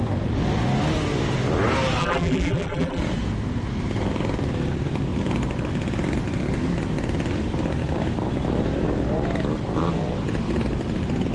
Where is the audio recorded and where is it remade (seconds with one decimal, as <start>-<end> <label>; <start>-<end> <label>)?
0.0-2.0 recorded; 2.0-3.0 remade; 3.0-11.3 recorded

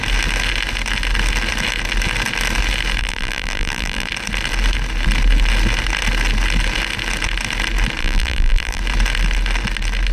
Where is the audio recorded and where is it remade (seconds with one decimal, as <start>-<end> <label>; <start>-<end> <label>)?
0.0-3.0 recorded; 3.0-4.1 remade; 4.1-8.0 recorded; 8.0-8.8 remade; 8.8-10.1 recorded

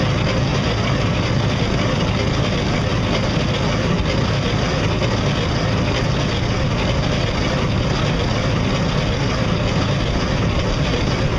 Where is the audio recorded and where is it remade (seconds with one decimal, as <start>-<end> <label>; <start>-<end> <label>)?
0.0-0.5 recorded; 0.5-1.3 remade; 1.3-11.4 recorded

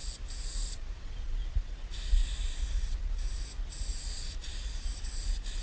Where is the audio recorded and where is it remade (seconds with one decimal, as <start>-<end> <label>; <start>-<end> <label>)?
0.0-5.6 recorded

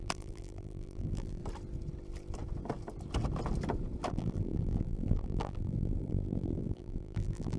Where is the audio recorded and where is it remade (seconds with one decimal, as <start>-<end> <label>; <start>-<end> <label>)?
0.0-1.4 remade; 1.4-4.1 recorded; 4.1-7.6 remade

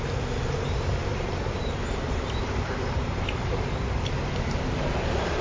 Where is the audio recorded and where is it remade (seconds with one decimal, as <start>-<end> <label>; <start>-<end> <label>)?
0.0-1.0 recorded; 1.0-3.7 remade; 3.7-5.4 recorded

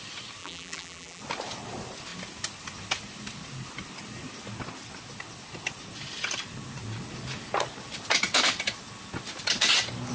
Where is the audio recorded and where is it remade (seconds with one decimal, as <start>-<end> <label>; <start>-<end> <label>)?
0.0-0.4 recorded; 0.4-1.2 remade; 1.2-10.1 recorded

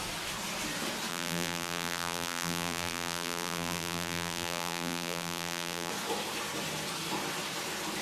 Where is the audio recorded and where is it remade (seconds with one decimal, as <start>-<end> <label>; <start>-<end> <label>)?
0.0-1.1 recorded; 1.1-5.9 remade; 5.9-8.0 recorded